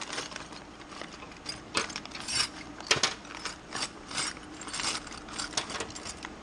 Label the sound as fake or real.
real